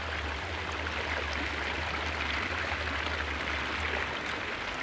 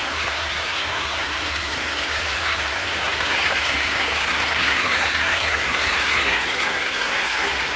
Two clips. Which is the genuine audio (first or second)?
first